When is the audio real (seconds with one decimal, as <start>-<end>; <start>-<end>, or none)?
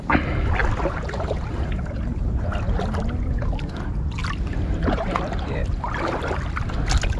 0.0-4.2; 6.3-7.2